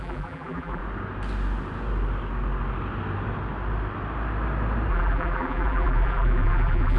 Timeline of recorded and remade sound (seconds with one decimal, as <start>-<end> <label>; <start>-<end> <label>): 0.0-0.8 remade; 0.8-4.9 recorded; 4.9-7.0 remade